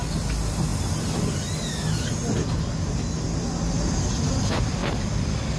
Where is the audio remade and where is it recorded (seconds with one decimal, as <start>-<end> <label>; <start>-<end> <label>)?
0.0-0.7 remade; 0.7-4.1 recorded; 4.1-5.6 remade